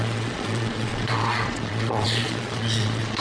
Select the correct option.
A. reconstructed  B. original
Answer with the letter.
A